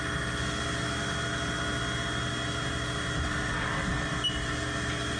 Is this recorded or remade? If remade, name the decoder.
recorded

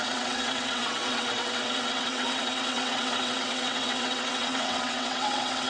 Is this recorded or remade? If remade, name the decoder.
remade, vocoder, WaveNeXt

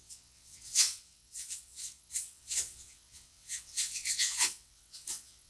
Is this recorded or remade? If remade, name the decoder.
remade, vocoder, WaveNeXt